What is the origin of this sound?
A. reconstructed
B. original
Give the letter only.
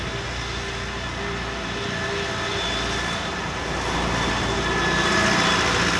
B